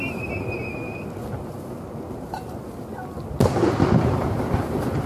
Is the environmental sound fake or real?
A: real